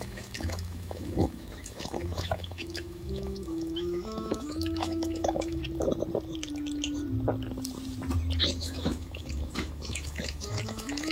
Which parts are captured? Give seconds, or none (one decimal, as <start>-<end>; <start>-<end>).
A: 5.6-8.4